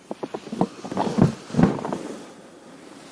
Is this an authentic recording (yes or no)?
yes